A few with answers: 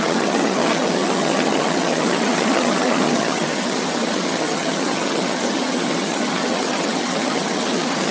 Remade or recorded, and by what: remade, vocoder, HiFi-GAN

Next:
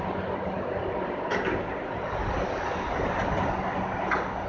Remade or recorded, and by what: recorded